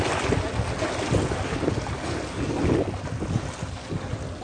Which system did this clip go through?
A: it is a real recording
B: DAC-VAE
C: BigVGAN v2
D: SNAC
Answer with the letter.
A